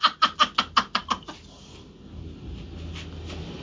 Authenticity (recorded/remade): recorded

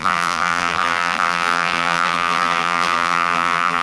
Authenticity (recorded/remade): remade